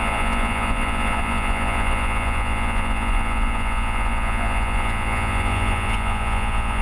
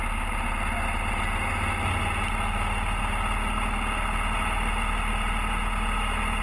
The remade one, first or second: first